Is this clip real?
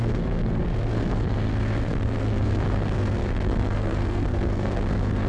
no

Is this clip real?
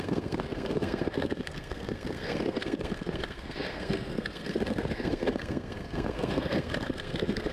no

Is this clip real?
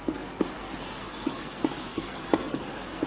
no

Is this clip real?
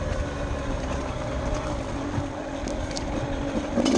yes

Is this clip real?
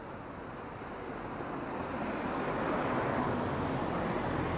yes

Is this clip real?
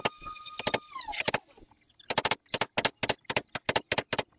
yes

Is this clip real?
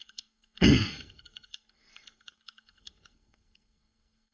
no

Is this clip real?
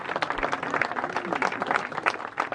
yes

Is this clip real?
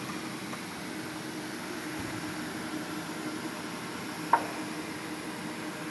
yes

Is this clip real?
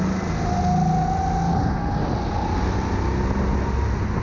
yes